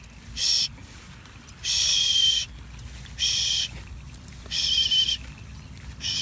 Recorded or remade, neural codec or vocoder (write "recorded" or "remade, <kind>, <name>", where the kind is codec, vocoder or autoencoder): recorded